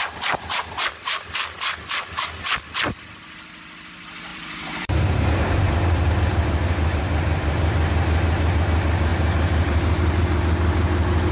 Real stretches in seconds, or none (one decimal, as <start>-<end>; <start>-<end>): 0.0-4.3; 8.6-9.1; 10.4-11.3